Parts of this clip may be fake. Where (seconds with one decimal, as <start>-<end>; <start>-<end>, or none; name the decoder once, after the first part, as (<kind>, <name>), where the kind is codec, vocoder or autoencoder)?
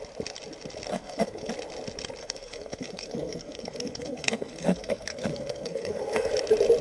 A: 0.9-1.5 (codec, SNAC); 2.2-6.3